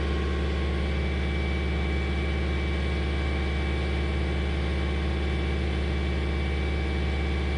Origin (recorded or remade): recorded